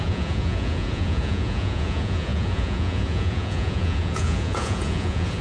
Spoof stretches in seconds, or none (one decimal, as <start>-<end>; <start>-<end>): 0.0-5.4